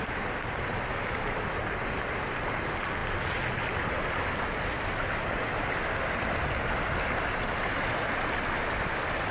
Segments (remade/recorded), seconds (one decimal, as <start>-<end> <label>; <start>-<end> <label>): 0.0-9.3 recorded